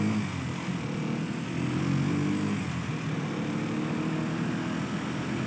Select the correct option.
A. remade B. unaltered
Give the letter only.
B